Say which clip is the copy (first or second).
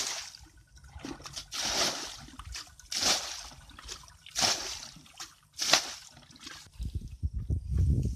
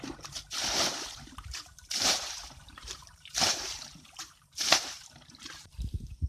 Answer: second